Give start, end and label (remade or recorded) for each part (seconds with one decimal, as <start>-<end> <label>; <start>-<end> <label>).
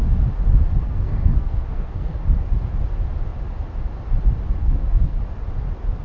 0.0-0.8 recorded; 0.8-2.2 remade; 2.2-4.6 recorded; 4.6-5.2 remade; 5.2-6.0 recorded